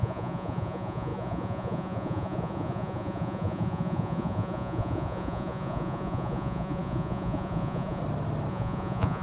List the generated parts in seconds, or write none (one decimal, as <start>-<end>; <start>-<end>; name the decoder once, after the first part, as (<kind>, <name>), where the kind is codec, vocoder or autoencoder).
0.0-8.0 (vocoder, Vocos); 8.5-9.2